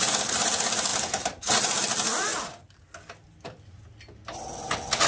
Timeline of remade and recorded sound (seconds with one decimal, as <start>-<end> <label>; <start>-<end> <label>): 0.0-0.9 recorded; 0.9-1.5 remade; 1.5-2.3 recorded; 2.3-2.9 remade; 2.9-5.1 recorded